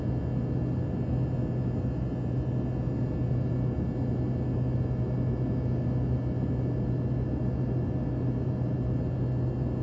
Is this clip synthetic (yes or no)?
no